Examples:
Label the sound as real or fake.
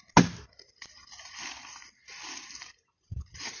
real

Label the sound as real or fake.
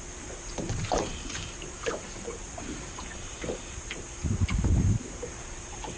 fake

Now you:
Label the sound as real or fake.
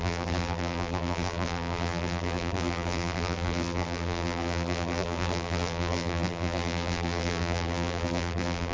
fake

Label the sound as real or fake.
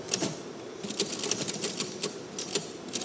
real